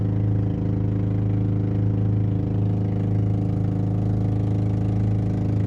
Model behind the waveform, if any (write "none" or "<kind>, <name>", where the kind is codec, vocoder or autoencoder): none